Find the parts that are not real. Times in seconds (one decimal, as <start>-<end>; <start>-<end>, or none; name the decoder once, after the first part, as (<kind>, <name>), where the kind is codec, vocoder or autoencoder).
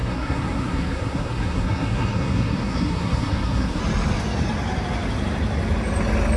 0.0-3.8 (codec, SNAC)